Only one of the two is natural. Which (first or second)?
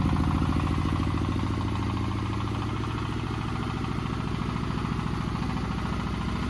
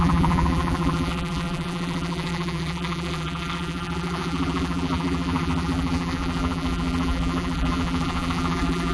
first